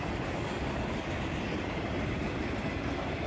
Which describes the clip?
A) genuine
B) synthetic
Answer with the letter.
A